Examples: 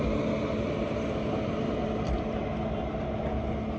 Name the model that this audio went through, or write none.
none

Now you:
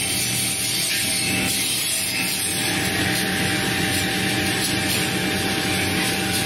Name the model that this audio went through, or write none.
none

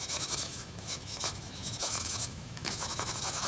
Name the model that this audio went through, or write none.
autoencoder, DAC-VAE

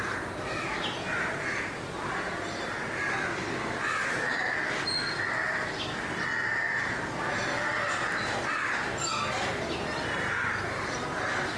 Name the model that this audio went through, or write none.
none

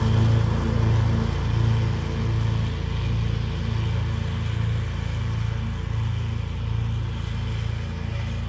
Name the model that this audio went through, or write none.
none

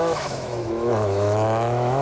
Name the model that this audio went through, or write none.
autoencoder, DAC-VAE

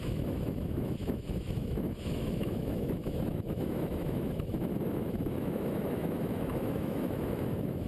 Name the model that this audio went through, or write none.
autoencoder, DAC-VAE